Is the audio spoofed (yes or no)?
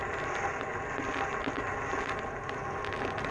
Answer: no